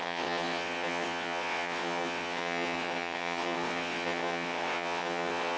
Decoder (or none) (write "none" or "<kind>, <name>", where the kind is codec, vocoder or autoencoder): vocoder, WaveNeXt